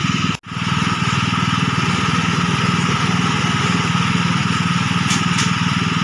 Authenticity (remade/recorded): recorded